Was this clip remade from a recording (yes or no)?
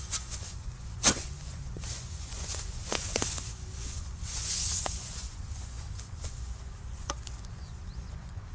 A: yes